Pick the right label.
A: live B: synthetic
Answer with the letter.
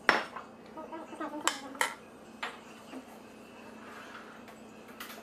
A